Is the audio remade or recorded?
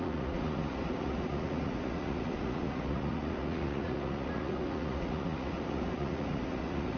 remade